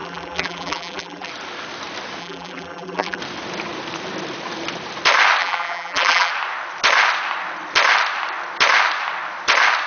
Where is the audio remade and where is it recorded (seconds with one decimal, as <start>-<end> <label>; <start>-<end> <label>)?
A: 0.0-1.3 remade; 1.3-2.2 recorded; 2.2-3.2 remade; 3.2-5.4 recorded; 5.4-6.3 remade; 6.3-9.9 recorded